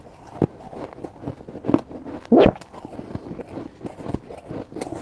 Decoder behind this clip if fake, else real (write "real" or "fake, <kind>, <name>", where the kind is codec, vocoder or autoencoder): real